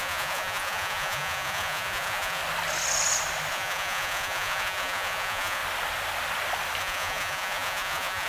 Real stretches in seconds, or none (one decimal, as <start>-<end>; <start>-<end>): 2.4-3.5; 5.6-6.8